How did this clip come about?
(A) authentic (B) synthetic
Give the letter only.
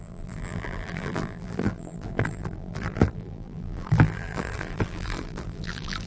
B